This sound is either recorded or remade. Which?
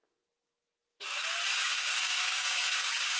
remade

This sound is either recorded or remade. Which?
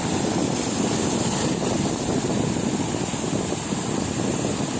recorded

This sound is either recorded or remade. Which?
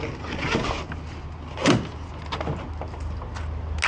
recorded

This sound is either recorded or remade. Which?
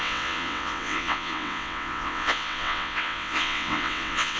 remade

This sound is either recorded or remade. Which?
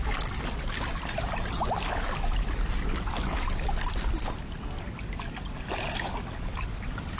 recorded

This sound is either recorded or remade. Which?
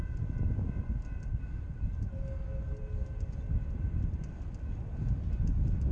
recorded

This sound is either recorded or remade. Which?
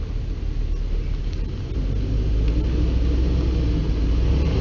recorded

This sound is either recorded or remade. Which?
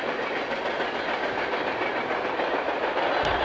recorded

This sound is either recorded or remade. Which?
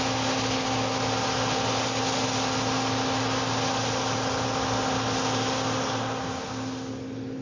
recorded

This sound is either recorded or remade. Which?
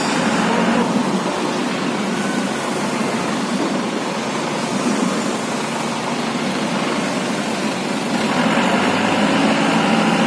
recorded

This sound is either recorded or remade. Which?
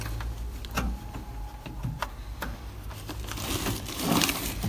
recorded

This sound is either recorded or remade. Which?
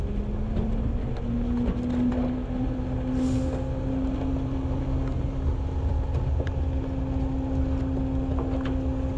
recorded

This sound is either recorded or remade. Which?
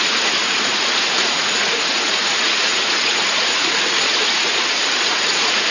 remade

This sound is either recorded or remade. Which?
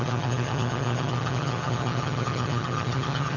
remade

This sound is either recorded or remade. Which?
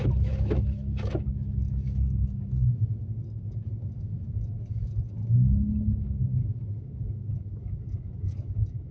remade